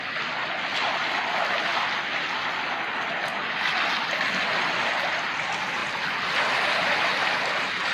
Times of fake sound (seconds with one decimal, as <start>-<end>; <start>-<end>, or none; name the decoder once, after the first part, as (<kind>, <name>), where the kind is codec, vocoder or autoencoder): none